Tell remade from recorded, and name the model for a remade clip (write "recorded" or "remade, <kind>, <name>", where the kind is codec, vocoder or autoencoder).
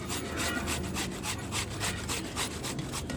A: recorded